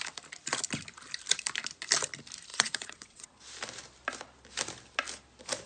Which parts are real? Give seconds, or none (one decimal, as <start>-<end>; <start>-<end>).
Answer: 0.0-2.5; 3.4-5.7